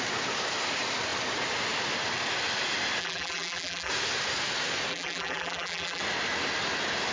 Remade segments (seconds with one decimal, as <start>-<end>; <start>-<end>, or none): 3.0-3.9; 4.9-6.0